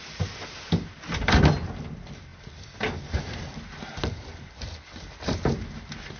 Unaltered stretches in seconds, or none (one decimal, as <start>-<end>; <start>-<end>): 0.0-6.2